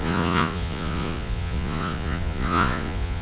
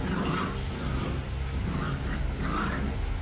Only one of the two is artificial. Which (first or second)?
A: first